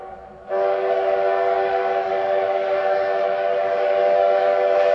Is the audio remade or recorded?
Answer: remade